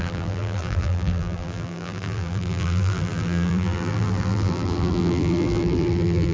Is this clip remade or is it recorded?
remade